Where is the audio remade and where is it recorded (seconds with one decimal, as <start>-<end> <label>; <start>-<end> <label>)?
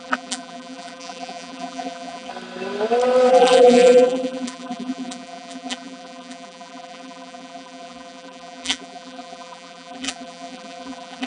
0.0-2.3 remade; 2.3-3.3 recorded; 3.3-11.3 remade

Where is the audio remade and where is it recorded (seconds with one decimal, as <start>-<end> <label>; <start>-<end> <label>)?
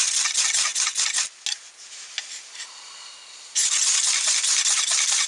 0.0-5.3 recorded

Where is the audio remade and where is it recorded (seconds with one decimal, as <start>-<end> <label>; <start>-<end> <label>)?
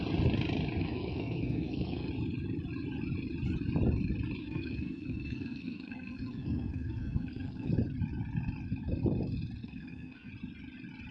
0.0-0.8 recorded; 0.8-2.1 remade; 2.1-4.4 recorded; 4.4-7.7 remade; 7.7-9.6 recorded; 9.6-10.3 remade; 10.3-11.1 recorded